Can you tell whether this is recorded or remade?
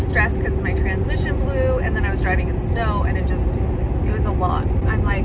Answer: recorded